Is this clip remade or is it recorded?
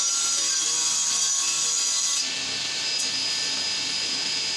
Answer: recorded